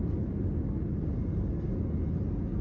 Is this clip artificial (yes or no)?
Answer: no